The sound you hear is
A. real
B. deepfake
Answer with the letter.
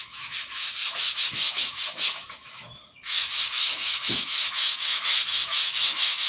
B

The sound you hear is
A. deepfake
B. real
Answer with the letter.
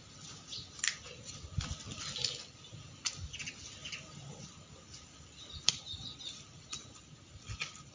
B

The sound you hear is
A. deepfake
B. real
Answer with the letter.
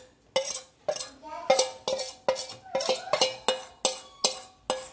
B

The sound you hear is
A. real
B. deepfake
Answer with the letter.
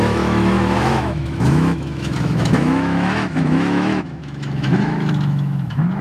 B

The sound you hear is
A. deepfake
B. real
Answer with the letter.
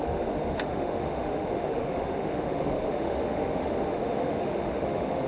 A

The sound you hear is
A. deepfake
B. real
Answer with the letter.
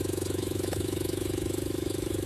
A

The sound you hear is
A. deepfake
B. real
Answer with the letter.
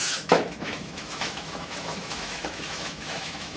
A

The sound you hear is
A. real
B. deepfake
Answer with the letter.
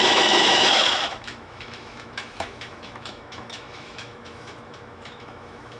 B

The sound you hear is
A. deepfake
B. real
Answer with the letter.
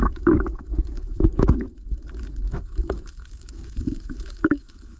A